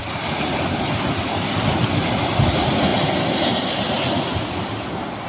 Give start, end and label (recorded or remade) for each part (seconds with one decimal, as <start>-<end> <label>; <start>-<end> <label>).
0.0-1.8 remade; 1.8-5.3 recorded